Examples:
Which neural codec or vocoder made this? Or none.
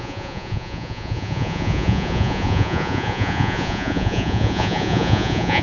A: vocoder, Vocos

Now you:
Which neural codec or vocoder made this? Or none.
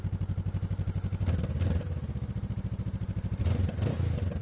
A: none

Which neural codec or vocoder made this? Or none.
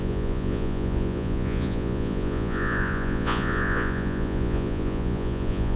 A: vocoder, Vocos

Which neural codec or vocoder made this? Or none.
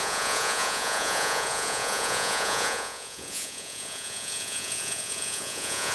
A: vocoder, Vocos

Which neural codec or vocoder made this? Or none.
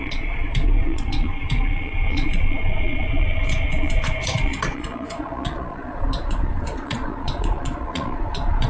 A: vocoder, Vocos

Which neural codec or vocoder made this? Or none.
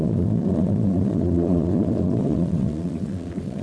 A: vocoder, Vocos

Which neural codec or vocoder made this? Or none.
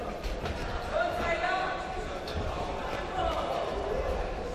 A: none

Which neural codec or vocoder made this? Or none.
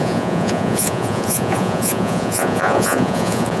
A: vocoder, Vocos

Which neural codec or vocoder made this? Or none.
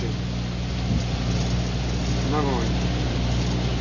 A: none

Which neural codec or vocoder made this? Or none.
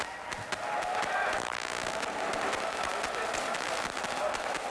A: none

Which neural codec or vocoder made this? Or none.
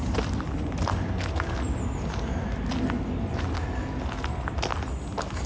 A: none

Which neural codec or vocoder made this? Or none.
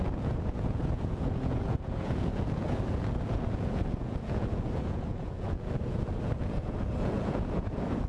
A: vocoder, Vocos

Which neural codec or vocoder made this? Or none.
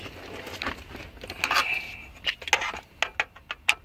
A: none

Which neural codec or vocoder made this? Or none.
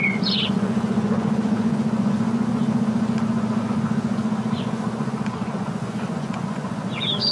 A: vocoder, Vocos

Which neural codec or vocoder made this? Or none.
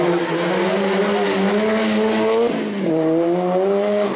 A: none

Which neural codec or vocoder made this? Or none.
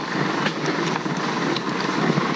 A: none